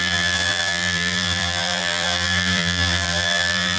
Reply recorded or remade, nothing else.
remade